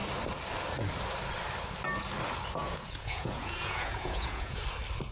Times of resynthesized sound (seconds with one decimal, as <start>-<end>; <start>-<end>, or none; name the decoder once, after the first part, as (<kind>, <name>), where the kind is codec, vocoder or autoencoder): 2.6-4.6 (vocoder, Vocos)